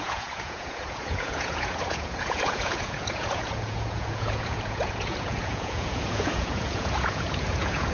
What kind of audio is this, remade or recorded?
remade